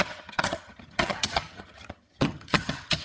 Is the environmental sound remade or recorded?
remade